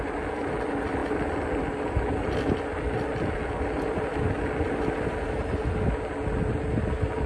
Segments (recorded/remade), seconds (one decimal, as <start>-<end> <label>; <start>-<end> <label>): 0.0-7.3 recorded